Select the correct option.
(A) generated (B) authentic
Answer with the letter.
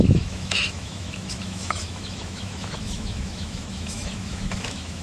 A